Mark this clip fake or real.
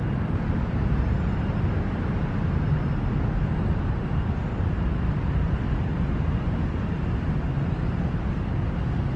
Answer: real